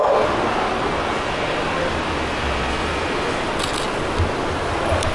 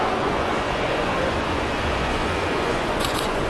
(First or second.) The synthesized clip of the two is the second